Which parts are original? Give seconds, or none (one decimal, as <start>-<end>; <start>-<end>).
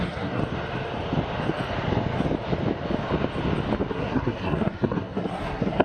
0.4-3.9